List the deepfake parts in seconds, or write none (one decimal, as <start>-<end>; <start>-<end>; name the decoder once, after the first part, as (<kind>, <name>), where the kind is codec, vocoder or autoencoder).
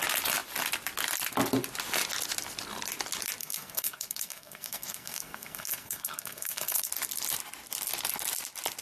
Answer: 3.4-6.9 (codec, SNAC)